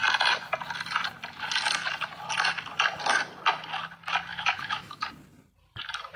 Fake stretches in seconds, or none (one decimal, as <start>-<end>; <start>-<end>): 4.3-5.0